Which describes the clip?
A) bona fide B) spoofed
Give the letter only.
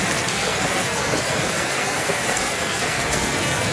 B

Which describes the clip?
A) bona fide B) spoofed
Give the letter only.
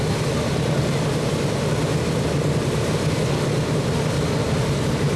A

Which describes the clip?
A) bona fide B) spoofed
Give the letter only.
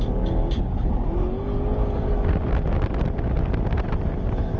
A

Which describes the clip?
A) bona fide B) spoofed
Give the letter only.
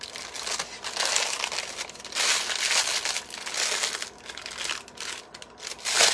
A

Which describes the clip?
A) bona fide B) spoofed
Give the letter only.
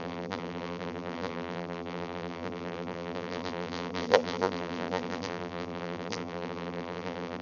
B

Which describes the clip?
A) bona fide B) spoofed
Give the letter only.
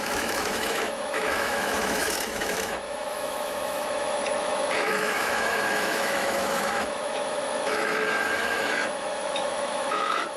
B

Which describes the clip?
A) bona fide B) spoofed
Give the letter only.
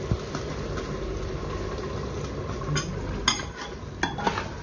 A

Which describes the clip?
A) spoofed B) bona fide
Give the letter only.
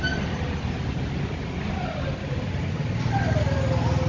B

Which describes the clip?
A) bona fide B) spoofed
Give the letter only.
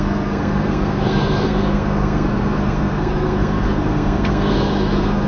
B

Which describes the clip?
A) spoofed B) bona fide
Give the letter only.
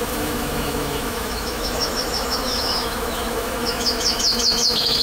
A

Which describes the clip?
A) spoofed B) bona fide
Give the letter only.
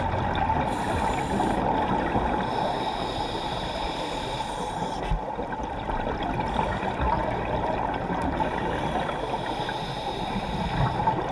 B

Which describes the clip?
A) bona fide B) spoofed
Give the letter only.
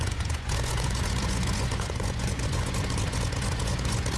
B